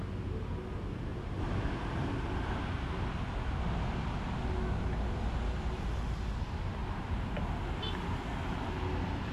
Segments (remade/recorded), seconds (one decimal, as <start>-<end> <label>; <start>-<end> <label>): 0.0-1.1 recorded; 1.1-3.0 remade; 3.0-9.3 recorded